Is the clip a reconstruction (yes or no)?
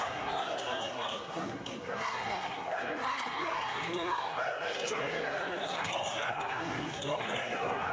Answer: yes